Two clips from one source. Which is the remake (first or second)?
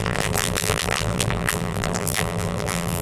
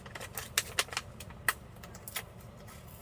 first